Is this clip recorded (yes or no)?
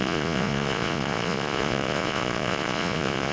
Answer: no